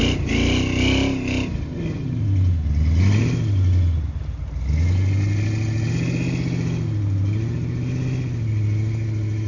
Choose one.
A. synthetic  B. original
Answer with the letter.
B